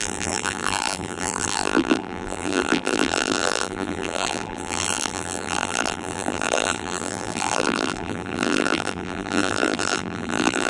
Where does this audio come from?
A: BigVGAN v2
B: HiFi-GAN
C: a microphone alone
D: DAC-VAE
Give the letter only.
A